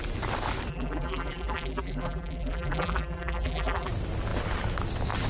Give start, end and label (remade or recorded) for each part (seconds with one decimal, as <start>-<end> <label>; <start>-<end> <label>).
0.0-0.7 recorded; 0.7-3.9 remade; 3.9-5.3 recorded